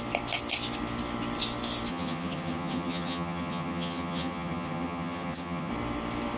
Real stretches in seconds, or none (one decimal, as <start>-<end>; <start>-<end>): 0.0-1.9; 5.7-6.4